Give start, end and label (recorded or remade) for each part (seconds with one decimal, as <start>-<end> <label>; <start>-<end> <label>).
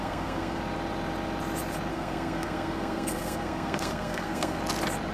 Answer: 0.0-0.6 remade; 0.6-1.9 recorded; 1.9-4.6 remade; 4.6-5.1 recorded